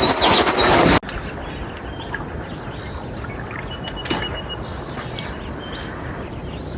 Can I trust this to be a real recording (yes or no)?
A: yes